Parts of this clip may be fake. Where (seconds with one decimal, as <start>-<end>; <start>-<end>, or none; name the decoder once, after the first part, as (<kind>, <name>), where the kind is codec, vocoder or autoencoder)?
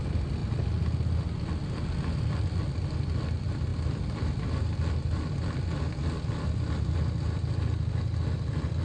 3.7-8.0 (vocoder, BigVGAN v2)